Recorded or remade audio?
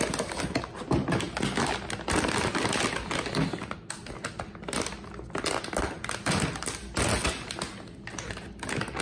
recorded